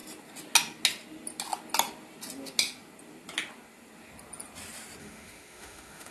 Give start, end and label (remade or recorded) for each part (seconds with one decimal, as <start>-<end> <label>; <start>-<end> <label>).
0.0-5.0 recorded; 5.0-6.1 remade